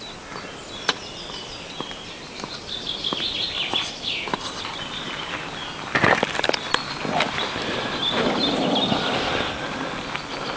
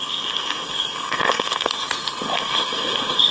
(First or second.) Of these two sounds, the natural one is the first